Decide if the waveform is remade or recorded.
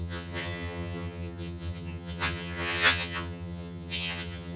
remade